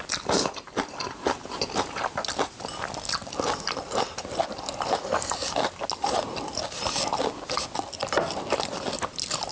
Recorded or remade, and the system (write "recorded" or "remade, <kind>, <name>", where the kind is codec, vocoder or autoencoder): recorded